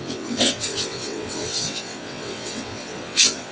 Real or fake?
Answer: fake